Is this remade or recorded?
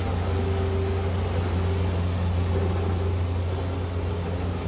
recorded